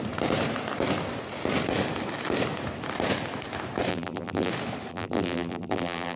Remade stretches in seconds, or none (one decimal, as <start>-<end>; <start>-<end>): 3.9-4.5; 4.9-6.2